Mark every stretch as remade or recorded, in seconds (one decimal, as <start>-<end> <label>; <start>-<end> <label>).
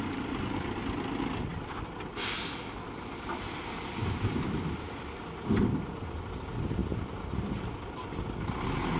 0.0-9.0 recorded